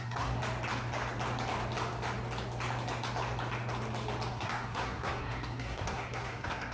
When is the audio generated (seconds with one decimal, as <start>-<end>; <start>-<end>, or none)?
0.0-0.4; 4.3-6.7